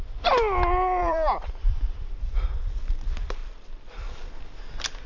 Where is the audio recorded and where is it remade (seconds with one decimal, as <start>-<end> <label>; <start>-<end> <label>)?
0.0-1.0 recorded; 1.0-2.5 remade; 2.5-3.4 recorded; 3.4-4.4 remade; 4.4-5.1 recorded